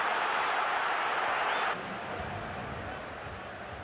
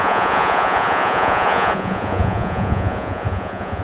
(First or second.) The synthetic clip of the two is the second